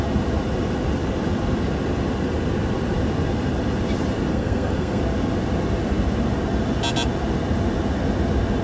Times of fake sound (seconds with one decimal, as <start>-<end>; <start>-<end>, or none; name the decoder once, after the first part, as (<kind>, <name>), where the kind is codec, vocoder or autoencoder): 4.3-5.0 (codec, SNAC)